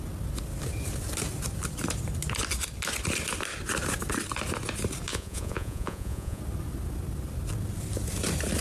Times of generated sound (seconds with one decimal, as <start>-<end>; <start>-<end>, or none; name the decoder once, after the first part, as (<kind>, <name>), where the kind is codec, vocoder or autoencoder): 5.1-6.4 (vocoder, Vocos)